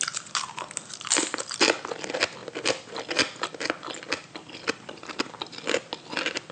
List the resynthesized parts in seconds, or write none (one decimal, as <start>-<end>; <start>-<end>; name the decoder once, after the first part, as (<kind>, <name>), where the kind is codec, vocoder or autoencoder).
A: none

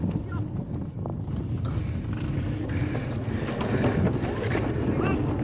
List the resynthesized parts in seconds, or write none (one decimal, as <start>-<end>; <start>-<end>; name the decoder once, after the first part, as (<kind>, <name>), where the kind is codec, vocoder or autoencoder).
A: none

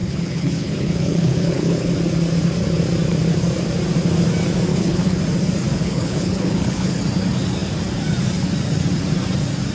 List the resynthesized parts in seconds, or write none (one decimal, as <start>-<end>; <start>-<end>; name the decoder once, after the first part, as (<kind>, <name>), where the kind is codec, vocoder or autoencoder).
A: 0.0-1.9 (codec, HILCodec); 4.7-5.2; 5.7-7.0

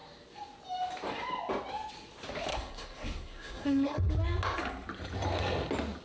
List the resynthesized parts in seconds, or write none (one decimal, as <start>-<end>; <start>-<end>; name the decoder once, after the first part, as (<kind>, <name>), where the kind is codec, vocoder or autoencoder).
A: 2.5-4.1 (codec, SNAC)